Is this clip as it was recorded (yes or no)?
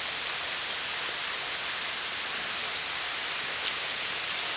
yes